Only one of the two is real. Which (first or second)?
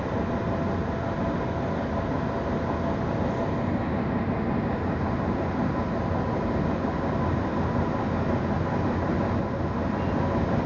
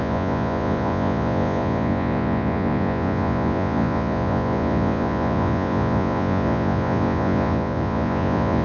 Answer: first